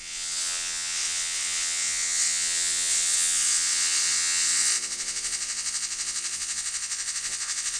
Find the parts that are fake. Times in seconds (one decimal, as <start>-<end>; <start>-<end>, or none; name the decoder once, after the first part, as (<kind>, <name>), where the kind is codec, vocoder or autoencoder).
0.0-7.8 (vocoder, WaveNeXt)